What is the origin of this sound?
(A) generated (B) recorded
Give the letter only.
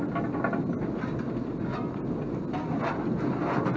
B